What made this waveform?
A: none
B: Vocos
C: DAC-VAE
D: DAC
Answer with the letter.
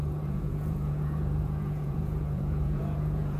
B